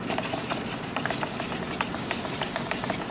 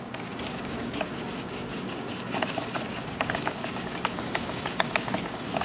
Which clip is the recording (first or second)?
first